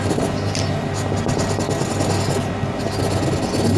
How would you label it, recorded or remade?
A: recorded